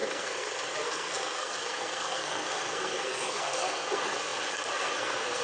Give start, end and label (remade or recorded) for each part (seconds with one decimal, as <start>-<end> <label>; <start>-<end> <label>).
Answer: 0.0-5.4 remade